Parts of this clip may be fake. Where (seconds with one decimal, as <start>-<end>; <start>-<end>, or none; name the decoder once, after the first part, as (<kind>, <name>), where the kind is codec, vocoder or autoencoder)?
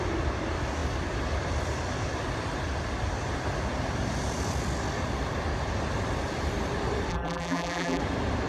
7.1-8.0 (vocoder, BigVGAN v2)